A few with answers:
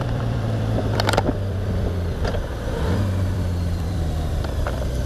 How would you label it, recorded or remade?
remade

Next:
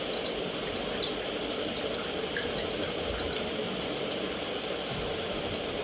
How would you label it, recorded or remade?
recorded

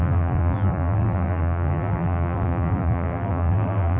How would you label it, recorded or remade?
remade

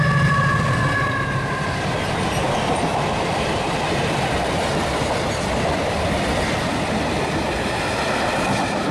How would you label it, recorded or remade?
remade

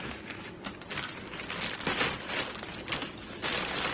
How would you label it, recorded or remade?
recorded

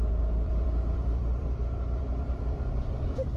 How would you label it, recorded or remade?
remade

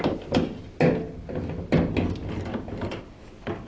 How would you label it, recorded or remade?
recorded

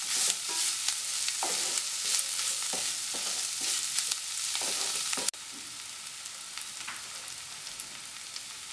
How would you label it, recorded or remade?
recorded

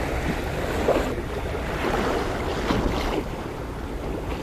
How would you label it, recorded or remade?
recorded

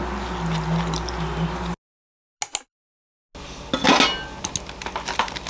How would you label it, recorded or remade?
recorded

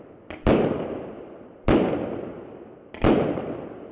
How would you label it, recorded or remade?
recorded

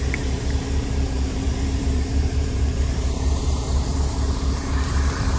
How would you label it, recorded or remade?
remade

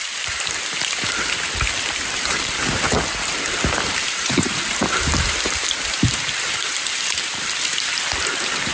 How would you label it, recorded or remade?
remade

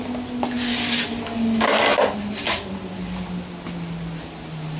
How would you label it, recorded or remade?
recorded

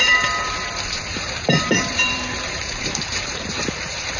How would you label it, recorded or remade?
remade